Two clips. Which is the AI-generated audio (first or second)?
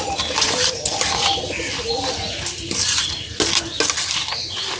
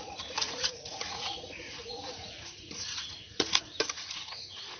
second